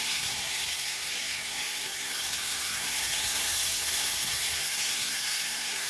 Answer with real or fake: fake